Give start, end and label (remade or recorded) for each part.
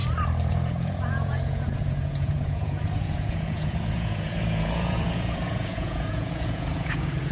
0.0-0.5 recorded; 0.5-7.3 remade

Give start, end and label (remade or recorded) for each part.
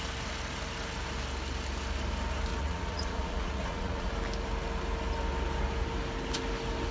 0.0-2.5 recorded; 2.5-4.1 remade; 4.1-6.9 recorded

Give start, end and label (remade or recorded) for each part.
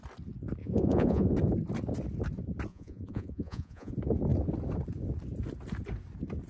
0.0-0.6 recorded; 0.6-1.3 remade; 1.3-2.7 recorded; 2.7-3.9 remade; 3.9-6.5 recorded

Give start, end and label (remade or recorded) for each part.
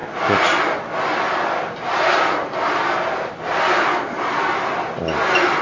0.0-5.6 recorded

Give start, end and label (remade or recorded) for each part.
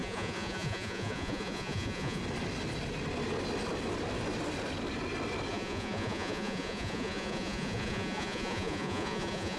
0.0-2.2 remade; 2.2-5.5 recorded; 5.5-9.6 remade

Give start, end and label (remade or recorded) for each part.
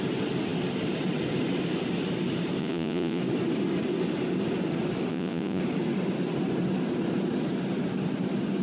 0.0-2.6 recorded; 2.6-3.2 remade; 3.2-5.1 recorded; 5.1-5.6 remade; 5.6-8.6 recorded